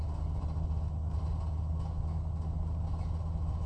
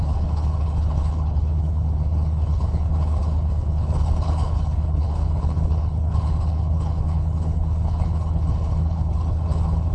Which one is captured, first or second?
first